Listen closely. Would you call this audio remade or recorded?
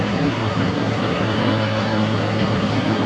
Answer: remade